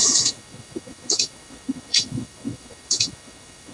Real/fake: fake